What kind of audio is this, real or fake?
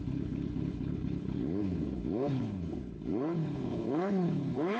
fake